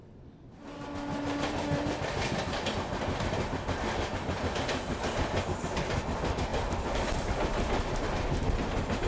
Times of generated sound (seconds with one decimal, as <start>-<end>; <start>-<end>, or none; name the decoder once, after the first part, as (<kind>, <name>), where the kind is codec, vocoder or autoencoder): 6.5-7.1 (vocoder, BigVGAN v2)